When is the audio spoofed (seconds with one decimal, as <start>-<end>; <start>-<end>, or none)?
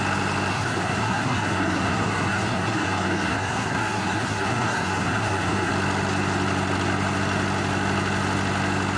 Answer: 0.5-5.7